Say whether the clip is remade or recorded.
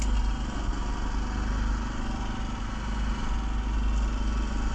recorded